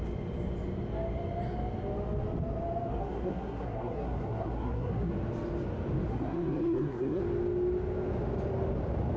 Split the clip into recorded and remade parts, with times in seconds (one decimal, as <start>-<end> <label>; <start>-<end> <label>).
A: 0.0-3.0 recorded; 3.0-5.1 remade; 5.1-6.1 recorded; 6.1-7.2 remade; 7.2-9.2 recorded